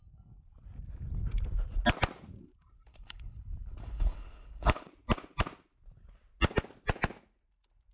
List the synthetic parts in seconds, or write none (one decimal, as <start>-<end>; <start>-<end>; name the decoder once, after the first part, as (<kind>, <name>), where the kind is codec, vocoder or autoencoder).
2.9-4.9 (codec, HILCodec)